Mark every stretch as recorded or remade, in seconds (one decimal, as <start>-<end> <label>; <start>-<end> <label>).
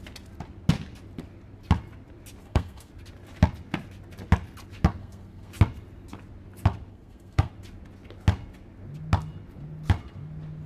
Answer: 0.0-2.4 recorded; 2.4-2.9 remade; 2.9-5.0 recorded; 5.0-5.5 remade; 5.5-6.9 recorded; 6.9-7.5 remade; 7.5-10.7 recorded